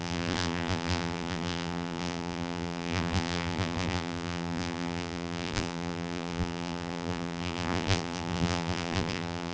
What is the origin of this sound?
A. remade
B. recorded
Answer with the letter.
A